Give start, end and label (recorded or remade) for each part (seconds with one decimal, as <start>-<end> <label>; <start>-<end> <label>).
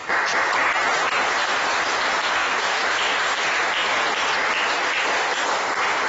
0.0-2.4 recorded; 2.4-3.0 remade; 3.0-6.1 recorded